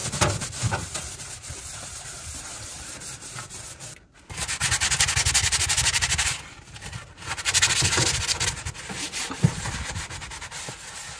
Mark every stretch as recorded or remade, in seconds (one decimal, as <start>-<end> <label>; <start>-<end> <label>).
0.0-11.2 recorded